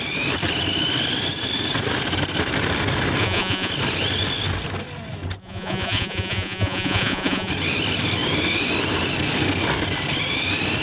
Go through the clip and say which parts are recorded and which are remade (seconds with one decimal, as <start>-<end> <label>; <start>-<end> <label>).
0.0-3.2 recorded; 3.2-3.7 remade; 3.7-5.4 recorded; 5.4-7.5 remade; 7.5-10.8 recorded